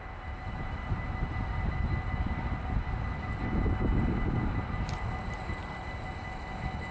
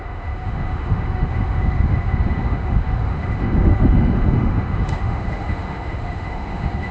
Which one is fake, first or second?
second